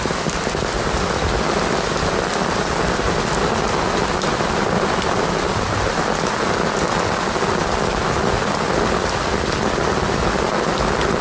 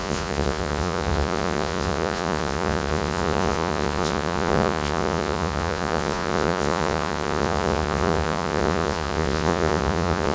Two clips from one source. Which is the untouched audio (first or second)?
first